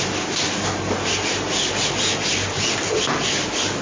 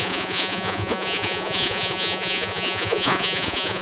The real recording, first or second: first